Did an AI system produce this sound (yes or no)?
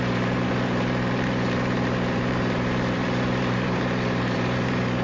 yes